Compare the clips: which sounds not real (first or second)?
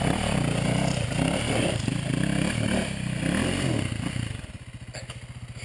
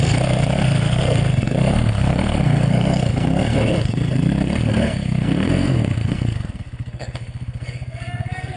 second